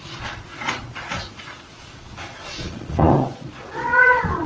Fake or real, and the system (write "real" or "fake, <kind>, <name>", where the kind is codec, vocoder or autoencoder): fake, vocoder, Vocos